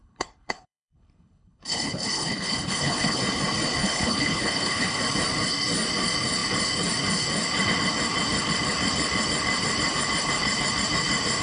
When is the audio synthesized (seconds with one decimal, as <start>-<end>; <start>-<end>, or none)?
0.0-3.2; 3.8-5.0